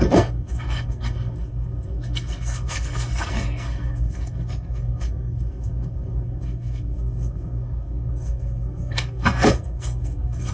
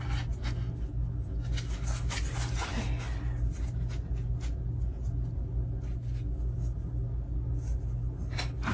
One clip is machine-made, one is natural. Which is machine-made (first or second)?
first